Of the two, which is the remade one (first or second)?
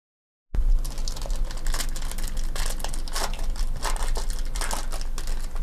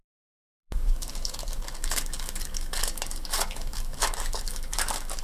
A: second